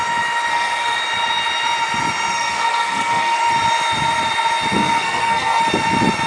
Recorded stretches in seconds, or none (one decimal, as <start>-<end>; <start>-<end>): 0.0-0.5; 1.0-2.3; 3.4-4.8; 5.6-6.3